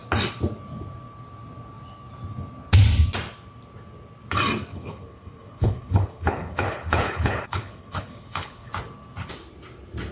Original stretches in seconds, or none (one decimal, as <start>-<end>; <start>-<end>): 0.0-4.7; 8.7-10.1